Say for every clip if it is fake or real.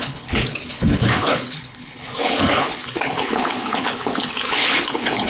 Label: fake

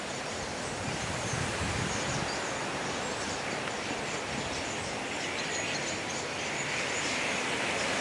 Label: real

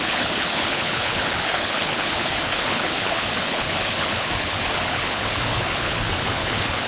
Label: fake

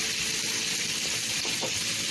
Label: real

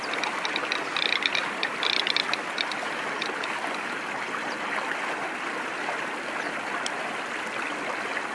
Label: real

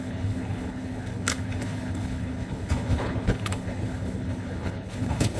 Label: fake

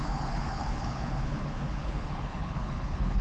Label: fake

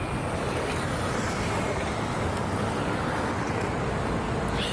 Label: real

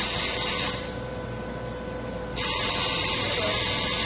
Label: real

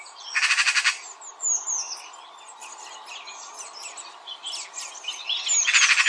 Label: real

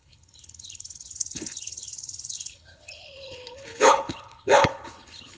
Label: fake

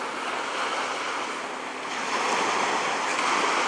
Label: real